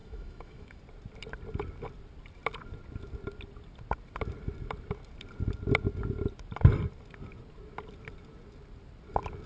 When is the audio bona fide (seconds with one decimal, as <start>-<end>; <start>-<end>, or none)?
0.8-9.5